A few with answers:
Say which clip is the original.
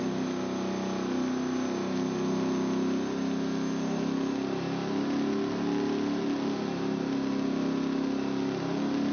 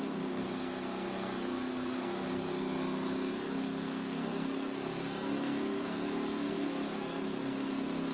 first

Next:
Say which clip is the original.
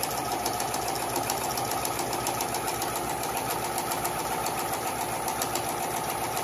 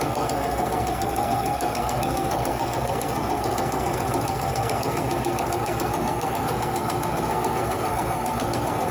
first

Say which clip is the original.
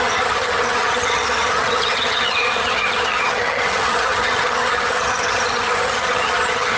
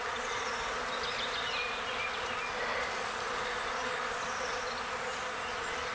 second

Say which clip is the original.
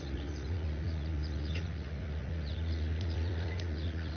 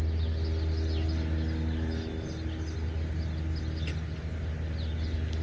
second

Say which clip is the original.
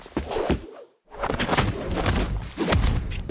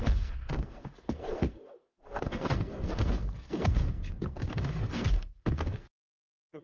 first